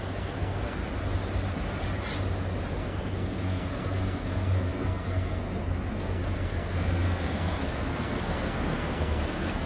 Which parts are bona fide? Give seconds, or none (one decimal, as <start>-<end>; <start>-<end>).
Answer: 0.8-2.7